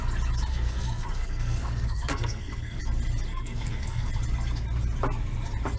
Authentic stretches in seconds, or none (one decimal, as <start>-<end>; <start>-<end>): 0.0-0.5; 2.8-3.3; 4.1-5.8